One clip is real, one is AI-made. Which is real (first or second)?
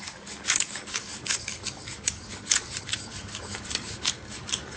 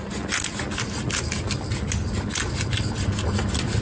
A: second